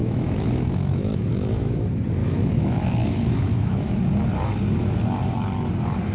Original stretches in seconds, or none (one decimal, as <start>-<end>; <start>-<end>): 1.8-2.2; 4.0-6.1